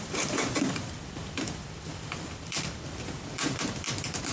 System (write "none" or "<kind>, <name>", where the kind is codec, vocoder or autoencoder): vocoder, BigVGAN v2